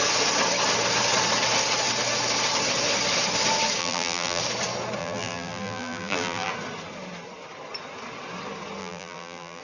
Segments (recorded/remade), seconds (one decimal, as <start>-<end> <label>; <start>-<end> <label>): 0.0-3.8 recorded; 3.8-4.4 remade; 4.4-5.0 recorded; 5.0-6.5 remade; 6.5-8.8 recorded; 8.8-9.6 remade